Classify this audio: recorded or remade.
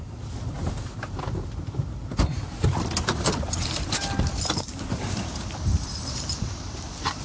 remade